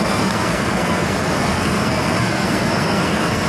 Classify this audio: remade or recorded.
remade